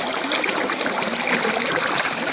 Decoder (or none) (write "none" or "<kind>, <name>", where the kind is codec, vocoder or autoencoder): none